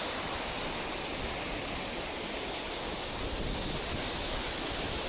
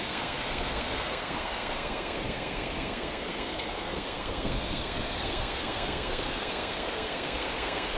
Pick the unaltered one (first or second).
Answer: first